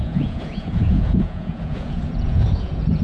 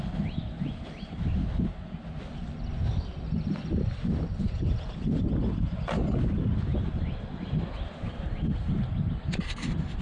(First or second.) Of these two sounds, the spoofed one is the first